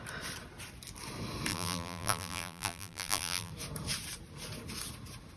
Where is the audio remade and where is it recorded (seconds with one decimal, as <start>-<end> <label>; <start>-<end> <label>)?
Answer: 0.0-1.5 recorded; 1.5-3.5 remade; 3.5-5.4 recorded